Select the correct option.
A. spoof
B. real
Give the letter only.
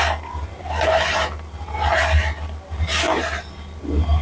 B